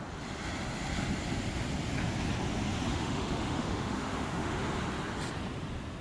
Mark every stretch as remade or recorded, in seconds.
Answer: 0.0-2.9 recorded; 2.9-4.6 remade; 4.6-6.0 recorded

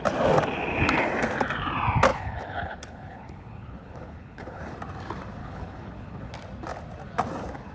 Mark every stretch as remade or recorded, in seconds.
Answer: 0.0-2.1 recorded; 2.1-4.6 remade; 4.6-5.4 recorded; 5.4-6.3 remade; 6.3-7.7 recorded

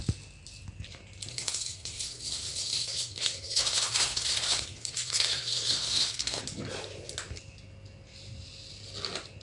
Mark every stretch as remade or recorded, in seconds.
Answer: 0.0-1.3 recorded; 1.3-6.4 remade; 6.4-9.4 recorded

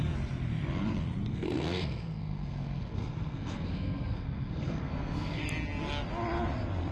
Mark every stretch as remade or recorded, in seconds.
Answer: 0.0-1.3 recorded; 1.3-5.4 remade; 5.4-6.9 recorded

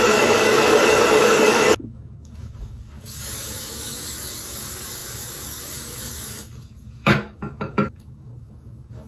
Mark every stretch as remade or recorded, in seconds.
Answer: 0.0-9.1 remade